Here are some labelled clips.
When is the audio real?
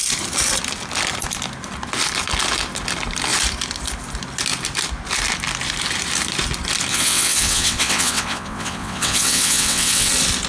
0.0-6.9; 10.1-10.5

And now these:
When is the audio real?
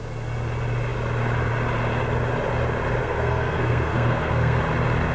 0.0-3.0; 4.6-5.1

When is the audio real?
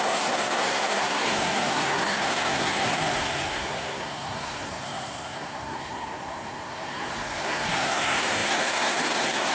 none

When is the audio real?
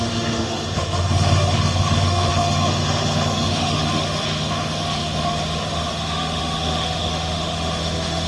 none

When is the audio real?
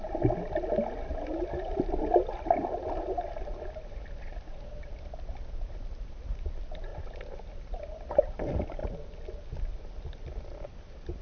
0.0-11.2